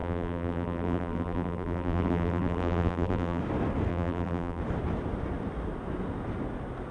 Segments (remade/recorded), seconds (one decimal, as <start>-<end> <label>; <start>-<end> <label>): 0.0-3.4 remade; 3.4-3.9 recorded; 3.9-4.6 remade; 4.6-6.9 recorded